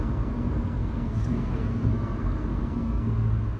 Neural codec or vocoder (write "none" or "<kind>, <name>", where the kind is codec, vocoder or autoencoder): codec, SNAC